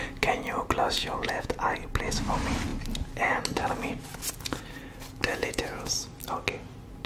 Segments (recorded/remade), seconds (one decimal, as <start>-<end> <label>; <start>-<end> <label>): 0.0-1.0 recorded; 1.0-1.5 remade; 1.5-5.3 recorded; 5.3-5.9 remade; 5.9-7.1 recorded